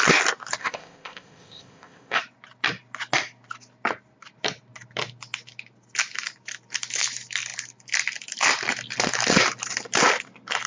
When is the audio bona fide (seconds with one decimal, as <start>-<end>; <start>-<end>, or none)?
0.0-0.6; 2.2-10.7